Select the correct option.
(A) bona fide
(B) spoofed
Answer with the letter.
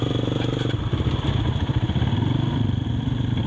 A